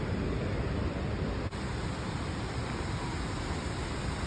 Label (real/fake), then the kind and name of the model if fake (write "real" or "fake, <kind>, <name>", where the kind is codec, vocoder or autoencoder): real